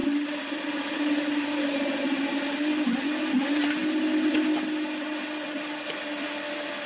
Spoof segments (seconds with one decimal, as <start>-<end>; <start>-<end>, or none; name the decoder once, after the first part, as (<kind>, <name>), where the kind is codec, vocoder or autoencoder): 0.0-2.0 (vocoder, BigVGAN v2)